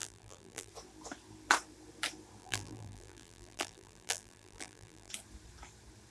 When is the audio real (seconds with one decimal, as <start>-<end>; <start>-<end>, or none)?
0.7-2.4; 5.1-6.1